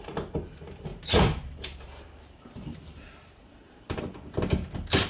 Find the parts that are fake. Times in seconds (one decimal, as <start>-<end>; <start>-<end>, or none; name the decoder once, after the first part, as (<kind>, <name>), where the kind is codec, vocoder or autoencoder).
0.9-4.0 (vocoder, BigVGAN v2)